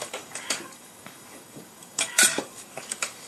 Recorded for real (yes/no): no